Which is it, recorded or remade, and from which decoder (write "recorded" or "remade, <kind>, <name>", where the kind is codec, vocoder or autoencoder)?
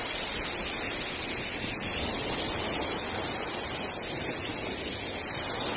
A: recorded